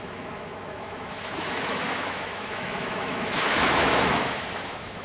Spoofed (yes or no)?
yes